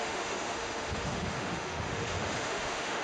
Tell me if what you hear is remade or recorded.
remade